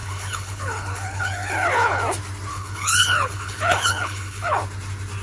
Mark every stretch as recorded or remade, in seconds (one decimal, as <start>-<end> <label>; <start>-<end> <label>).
0.0-2.0 remade; 2.0-2.5 recorded; 2.5-4.6 remade; 4.6-5.2 recorded